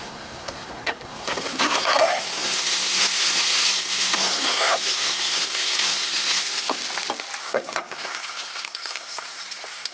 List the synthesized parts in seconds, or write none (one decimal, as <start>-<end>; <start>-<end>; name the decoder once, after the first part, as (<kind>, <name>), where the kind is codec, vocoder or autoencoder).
0.0-6.8 (codec, SNAC); 7.4-9.9